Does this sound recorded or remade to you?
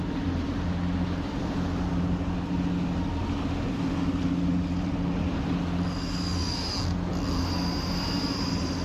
recorded